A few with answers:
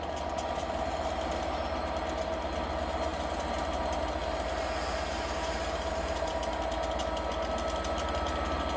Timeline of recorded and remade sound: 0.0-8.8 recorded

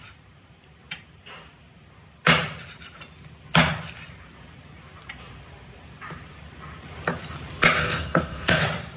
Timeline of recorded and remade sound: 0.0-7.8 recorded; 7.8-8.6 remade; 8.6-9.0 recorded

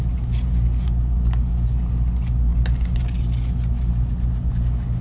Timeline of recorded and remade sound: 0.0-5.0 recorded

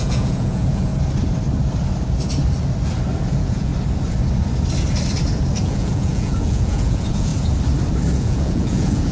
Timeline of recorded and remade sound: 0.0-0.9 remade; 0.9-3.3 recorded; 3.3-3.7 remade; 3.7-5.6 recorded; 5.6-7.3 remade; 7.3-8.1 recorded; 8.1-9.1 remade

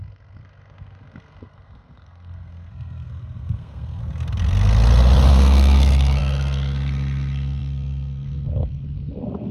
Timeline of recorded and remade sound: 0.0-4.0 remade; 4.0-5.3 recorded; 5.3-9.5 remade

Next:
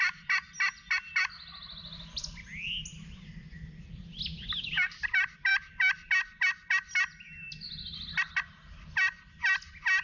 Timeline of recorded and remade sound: 0.0-10.0 recorded

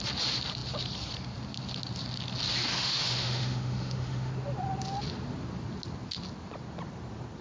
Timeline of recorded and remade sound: 0.0-2.7 recorded; 2.7-4.3 remade; 4.3-7.4 recorded

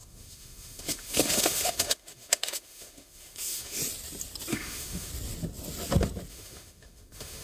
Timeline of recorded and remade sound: 0.0-3.8 remade; 3.8-4.5 recorded; 4.5-5.1 remade; 5.1-6.3 recorded; 6.3-7.4 remade